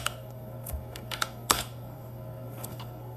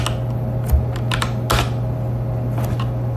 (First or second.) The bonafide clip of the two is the second